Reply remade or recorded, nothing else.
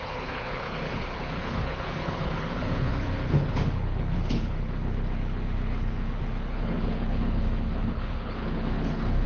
remade